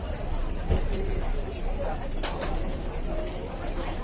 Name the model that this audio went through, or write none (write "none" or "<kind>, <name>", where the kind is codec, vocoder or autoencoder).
none